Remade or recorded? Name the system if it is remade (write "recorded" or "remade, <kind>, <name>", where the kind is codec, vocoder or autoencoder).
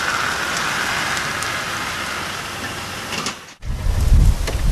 recorded